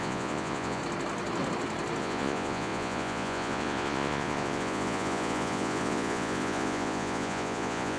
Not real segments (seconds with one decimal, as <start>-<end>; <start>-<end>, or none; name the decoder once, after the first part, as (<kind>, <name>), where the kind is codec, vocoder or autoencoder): 0.0-0.8 (vocoder, Vocos); 2.0-8.0